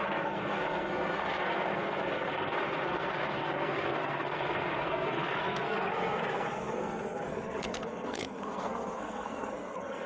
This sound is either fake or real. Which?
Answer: fake